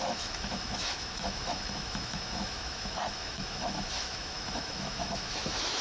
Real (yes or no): no